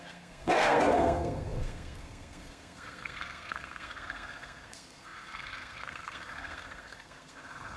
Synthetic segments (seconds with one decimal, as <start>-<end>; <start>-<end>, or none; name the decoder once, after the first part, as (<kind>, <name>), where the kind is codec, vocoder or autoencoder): 0.0-7.8 (codec, SNAC)